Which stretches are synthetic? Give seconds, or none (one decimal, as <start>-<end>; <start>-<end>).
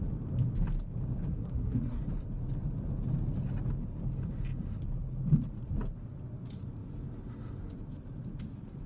1.3-2.0